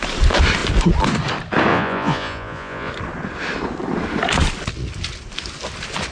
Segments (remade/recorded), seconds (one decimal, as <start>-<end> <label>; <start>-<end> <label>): 0.0-1.7 recorded; 1.7-2.9 remade; 2.9-6.1 recorded